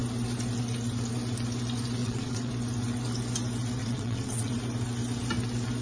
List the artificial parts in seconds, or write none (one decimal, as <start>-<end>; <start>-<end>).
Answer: 2.0-2.5; 3.8-4.5